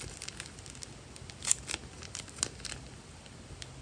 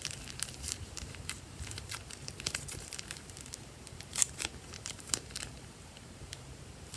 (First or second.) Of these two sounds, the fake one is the second